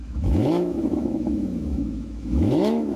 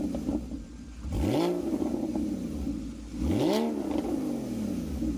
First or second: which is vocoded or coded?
first